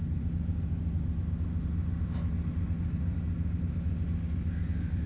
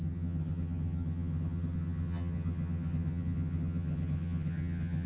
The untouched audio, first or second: first